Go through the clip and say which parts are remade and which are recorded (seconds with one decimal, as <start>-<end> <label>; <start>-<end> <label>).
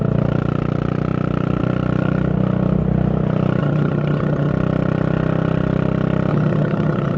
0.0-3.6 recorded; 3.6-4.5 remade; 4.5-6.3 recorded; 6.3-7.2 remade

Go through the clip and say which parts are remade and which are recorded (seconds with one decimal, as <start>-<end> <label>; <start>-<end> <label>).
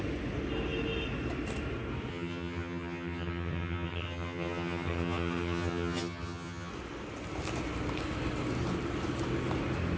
0.0-2.1 recorded; 2.1-6.7 remade; 6.7-10.0 recorded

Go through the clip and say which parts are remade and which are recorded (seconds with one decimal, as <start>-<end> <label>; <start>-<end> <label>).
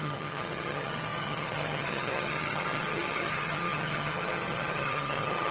0.0-5.5 remade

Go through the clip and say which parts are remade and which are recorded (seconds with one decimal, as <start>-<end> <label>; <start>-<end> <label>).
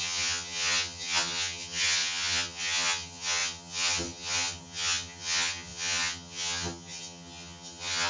0.0-8.1 remade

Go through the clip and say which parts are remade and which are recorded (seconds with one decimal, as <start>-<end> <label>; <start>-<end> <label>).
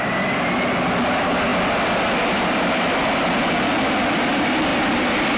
0.0-5.4 recorded